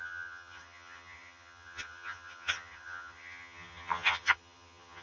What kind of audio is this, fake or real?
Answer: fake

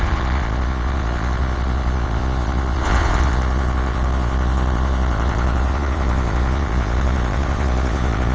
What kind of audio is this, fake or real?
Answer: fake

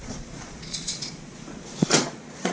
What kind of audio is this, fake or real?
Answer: fake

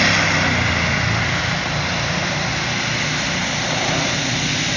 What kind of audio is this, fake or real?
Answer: real